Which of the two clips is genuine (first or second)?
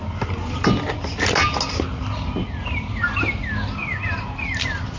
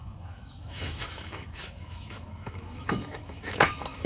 first